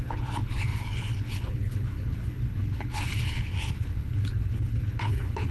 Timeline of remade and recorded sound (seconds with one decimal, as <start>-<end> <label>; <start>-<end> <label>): 0.0-5.5 remade